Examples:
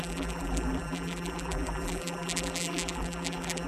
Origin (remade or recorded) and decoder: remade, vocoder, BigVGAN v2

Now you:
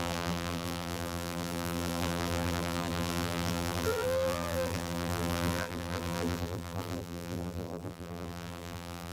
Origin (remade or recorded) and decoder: remade, vocoder, BigVGAN v2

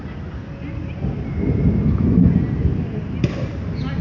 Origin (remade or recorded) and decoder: recorded